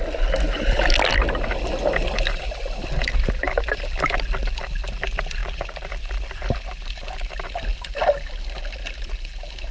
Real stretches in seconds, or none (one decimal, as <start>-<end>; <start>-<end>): 0.0-5.4; 5.9-9.7